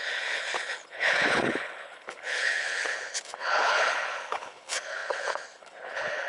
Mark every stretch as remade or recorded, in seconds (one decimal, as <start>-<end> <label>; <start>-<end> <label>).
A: 0.0-6.3 remade